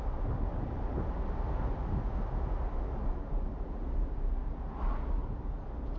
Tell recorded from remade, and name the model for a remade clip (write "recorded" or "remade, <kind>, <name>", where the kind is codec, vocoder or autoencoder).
recorded